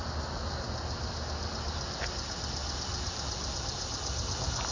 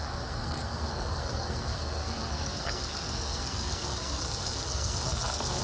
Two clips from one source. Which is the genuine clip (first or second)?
first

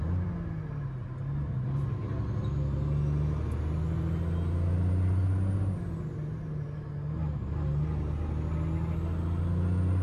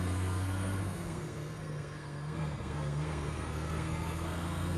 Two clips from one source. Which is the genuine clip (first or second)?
first